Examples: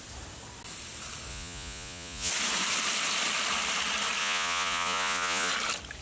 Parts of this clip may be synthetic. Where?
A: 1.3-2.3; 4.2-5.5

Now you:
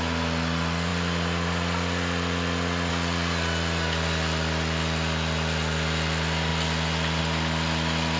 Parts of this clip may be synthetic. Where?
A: none

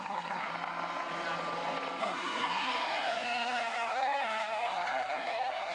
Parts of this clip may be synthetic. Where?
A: 0.0-0.5; 2.0-5.7

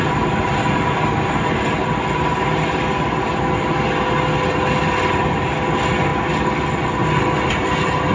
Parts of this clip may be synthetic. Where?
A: none

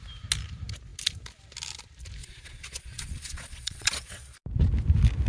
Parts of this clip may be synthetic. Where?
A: 2.2-4.4